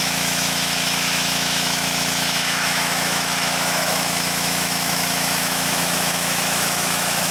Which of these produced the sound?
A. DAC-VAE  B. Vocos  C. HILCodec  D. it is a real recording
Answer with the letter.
A